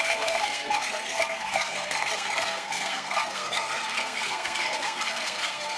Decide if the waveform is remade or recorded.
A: remade